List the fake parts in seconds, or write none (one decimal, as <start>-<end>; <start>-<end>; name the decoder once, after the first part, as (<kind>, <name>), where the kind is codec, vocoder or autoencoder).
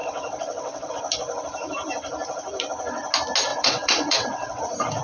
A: 0.0-0.9 (vocoder, WaveNeXt); 3.5-4.6